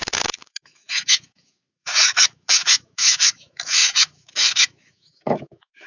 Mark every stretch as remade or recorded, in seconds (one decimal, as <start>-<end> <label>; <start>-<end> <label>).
0.0-5.9 remade